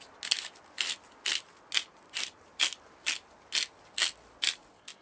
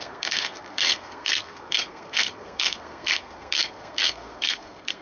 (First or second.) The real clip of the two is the first